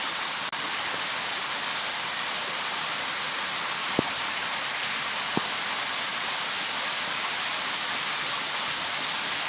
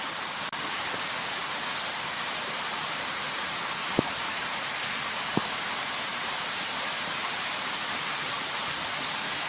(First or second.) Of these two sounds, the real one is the first